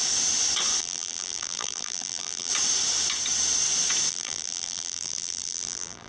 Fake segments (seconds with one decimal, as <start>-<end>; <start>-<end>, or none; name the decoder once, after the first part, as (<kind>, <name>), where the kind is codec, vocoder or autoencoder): 0.8-2.5 (vocoder, BigVGAN v2); 4.1-6.1